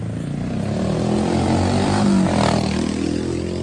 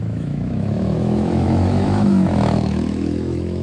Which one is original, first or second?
first